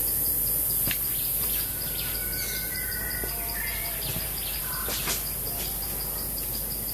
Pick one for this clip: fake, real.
real